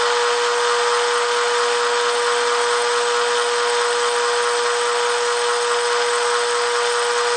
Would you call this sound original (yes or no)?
yes